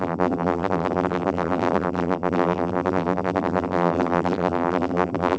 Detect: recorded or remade remade